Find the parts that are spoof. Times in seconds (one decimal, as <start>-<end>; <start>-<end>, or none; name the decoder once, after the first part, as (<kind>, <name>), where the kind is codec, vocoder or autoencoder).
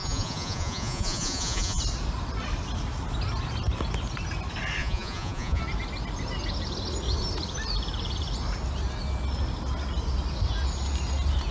0.0-1.8 (vocoder, Vocos); 4.8-5.6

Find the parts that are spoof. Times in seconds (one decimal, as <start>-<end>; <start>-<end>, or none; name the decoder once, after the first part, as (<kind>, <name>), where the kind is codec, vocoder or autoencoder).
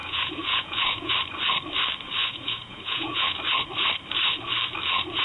0.0-1.1 (vocoder, Vocos); 2.2-3.4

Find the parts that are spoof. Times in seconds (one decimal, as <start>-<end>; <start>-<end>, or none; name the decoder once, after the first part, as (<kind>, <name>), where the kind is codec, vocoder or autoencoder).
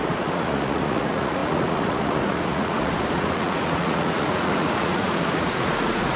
0.0-6.2 (vocoder, Vocos)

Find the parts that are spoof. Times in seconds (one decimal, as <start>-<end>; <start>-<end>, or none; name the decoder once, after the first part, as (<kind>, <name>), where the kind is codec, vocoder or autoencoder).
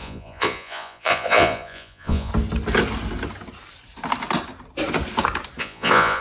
0.0-2.3 (vocoder, Vocos); 5.6-6.2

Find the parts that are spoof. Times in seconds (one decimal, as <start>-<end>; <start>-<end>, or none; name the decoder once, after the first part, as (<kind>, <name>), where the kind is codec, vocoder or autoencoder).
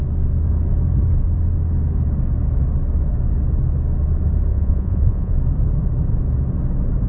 4.5-5.3 (vocoder, Vocos)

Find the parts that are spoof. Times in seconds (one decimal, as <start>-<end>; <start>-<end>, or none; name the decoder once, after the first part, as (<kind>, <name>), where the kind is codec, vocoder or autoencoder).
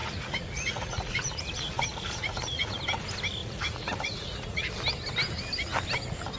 0.0-2.8 (vocoder, Vocos); 3.4-4.7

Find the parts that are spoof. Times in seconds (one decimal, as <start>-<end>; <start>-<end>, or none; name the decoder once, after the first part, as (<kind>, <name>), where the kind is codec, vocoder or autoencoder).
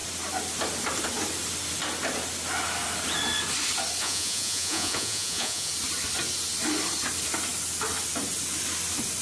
4.0-5.7 (vocoder, Vocos)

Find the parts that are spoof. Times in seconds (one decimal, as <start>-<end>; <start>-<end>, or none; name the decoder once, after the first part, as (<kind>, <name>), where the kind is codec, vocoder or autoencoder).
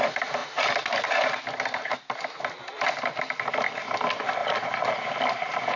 4.4-4.9 (vocoder, Vocos)